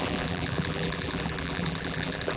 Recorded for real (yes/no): no